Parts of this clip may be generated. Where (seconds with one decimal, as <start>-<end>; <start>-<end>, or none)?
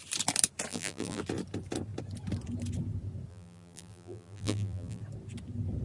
0.7-1.2; 3.3-5.0